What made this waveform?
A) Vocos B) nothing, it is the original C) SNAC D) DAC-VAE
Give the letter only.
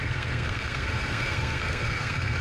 C